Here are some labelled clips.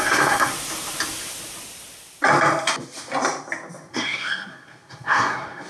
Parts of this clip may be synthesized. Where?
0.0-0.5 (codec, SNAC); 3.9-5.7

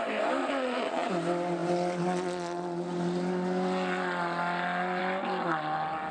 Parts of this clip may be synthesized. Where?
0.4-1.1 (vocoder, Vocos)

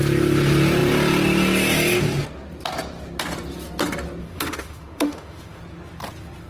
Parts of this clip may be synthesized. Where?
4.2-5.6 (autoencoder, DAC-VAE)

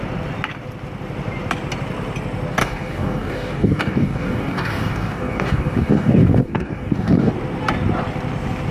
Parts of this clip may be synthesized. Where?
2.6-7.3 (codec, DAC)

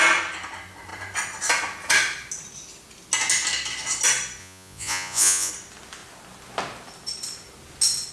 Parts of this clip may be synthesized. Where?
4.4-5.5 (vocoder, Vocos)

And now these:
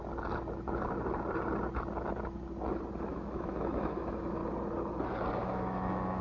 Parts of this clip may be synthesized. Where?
3.1-4.4 (autoencoder, DAC-VAE); 5.4-6.2

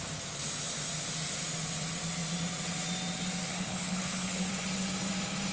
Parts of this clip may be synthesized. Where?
3.5-4.5 (codec, HILCodec)